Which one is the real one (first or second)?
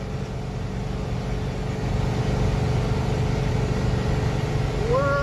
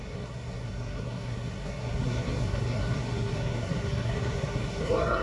first